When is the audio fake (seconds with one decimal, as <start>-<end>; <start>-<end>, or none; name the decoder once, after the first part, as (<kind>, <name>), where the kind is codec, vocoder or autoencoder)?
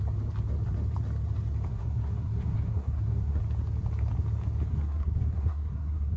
1.7-3.4 (codec, SNAC); 4.7-6.2